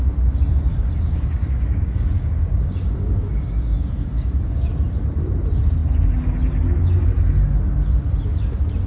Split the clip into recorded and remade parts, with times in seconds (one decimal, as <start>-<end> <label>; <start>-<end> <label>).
0.0-0.7 recorded; 0.7-4.7 remade; 4.7-8.9 recorded